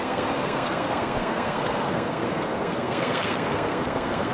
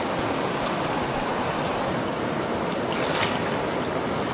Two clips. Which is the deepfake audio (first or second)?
first